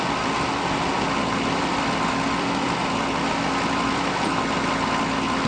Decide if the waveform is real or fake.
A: real